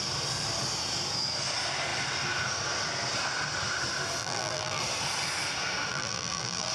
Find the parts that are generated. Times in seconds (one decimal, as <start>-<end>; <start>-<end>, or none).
4.2-4.8; 5.9-6.7